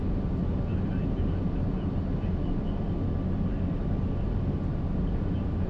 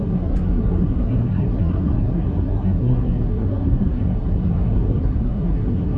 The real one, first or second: first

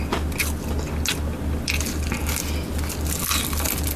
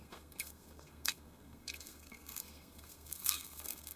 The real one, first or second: first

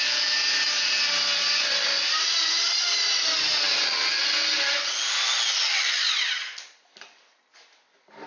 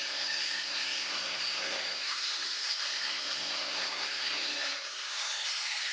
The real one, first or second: first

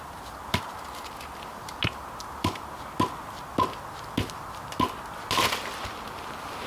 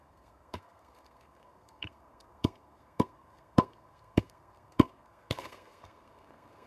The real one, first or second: first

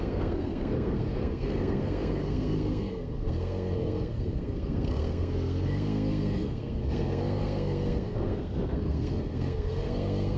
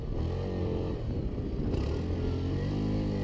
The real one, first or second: second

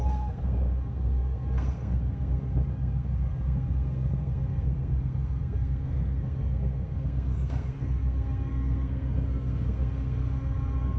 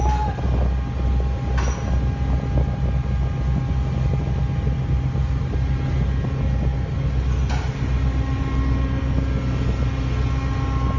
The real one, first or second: second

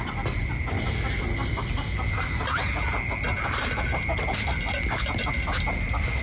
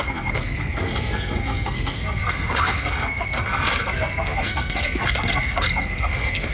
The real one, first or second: first